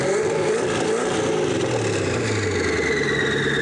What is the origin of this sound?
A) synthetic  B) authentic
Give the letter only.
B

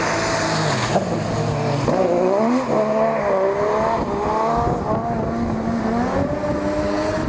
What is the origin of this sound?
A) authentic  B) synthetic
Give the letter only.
A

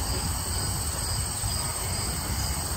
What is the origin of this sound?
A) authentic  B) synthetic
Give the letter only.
A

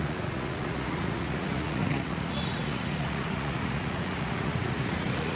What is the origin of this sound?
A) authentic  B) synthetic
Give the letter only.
B